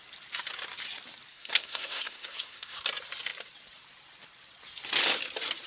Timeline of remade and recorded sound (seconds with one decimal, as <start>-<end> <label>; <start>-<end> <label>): 0.0-1.3 recorded; 1.3-2.8 remade; 2.8-5.7 recorded